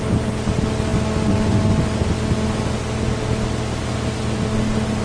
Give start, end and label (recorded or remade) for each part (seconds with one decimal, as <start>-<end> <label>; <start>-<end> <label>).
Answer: 0.0-5.0 recorded